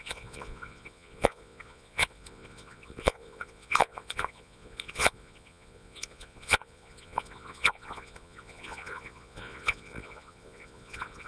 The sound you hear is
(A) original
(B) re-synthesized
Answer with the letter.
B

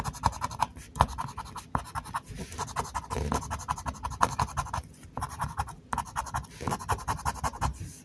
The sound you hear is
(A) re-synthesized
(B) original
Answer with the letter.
B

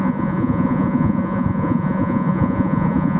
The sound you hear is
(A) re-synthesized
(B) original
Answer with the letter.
A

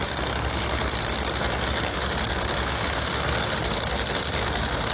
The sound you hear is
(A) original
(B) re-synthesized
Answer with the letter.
A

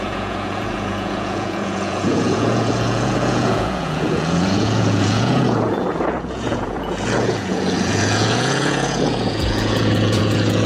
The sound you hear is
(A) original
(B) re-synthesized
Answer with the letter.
B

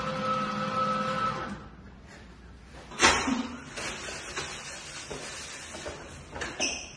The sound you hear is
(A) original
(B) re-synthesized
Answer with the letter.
A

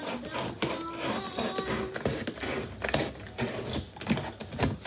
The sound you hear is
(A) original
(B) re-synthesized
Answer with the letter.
A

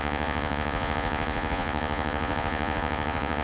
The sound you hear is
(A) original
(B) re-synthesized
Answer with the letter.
B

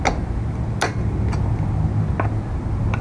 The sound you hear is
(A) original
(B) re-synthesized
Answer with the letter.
A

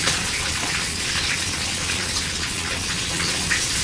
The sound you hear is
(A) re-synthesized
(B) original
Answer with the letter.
A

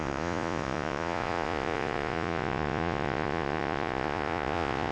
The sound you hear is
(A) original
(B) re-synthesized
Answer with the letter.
B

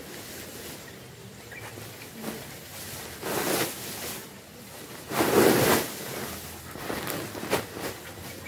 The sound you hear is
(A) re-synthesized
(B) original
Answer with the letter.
B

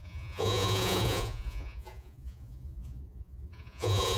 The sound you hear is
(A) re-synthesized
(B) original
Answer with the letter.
A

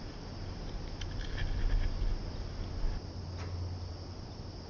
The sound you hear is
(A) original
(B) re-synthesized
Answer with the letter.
A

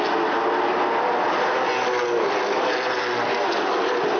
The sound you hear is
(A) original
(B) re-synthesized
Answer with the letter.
A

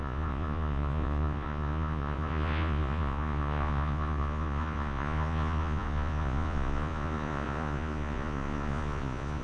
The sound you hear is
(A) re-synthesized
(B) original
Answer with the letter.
A